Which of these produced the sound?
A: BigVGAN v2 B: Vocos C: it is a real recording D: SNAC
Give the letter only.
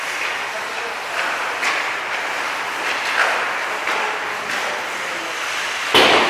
C